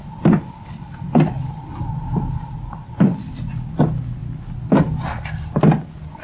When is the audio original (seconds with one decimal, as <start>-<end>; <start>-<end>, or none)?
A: 3.7-6.2